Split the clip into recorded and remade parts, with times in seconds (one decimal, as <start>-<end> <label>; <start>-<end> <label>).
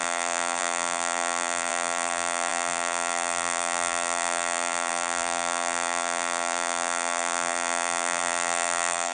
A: 0.0-9.1 remade